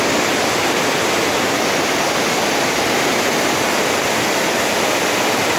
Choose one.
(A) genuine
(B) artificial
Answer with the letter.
A